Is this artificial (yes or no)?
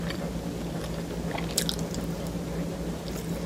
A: no